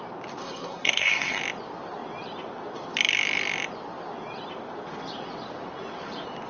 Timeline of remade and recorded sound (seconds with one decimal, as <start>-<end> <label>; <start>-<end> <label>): 0.0-0.4 recorded; 0.4-1.4 remade; 1.4-6.5 recorded